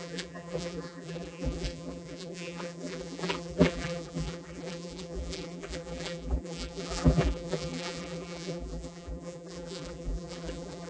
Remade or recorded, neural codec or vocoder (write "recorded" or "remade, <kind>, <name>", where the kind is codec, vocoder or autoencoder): remade, vocoder, BigVGAN v2